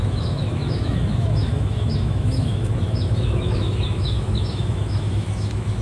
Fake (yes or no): yes